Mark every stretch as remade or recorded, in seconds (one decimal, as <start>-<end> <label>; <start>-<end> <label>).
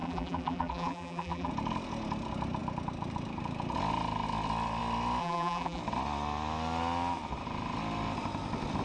0.0-1.5 remade; 1.5-5.2 recorded; 5.2-5.8 remade; 5.8-8.8 recorded